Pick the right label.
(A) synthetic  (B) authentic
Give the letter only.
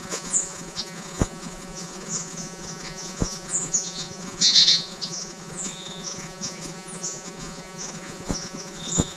A